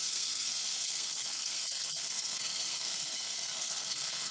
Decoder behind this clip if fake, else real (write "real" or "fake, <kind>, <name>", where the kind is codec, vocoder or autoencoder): fake, codec, SNAC